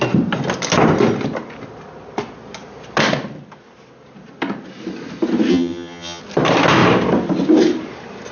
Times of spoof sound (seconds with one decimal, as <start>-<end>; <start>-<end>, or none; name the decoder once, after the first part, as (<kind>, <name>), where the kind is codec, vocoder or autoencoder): 5.5-6.2 (vocoder, HiFi-GAN)